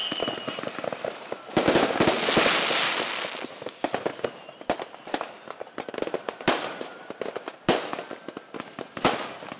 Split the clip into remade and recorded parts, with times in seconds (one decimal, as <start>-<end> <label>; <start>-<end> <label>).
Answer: 0.0-4.6 recorded; 4.6-9.6 remade